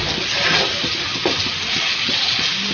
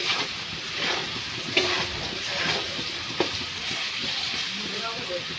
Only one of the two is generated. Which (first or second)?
second